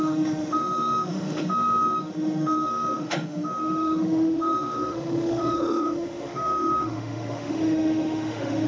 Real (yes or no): no